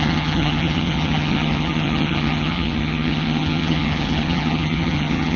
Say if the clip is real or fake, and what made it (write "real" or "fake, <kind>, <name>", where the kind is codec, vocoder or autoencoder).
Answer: fake, vocoder, HiFi-GAN